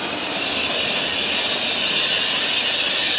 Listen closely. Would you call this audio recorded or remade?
recorded